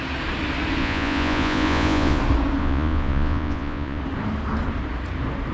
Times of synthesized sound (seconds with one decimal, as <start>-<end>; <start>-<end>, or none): 0.8-2.2; 2.6-4.0